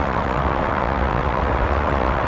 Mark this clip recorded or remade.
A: remade